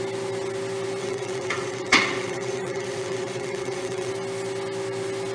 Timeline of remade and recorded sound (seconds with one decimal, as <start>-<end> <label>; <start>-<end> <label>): 0.0-1.0 recorded; 1.0-4.1 remade; 4.1-5.3 recorded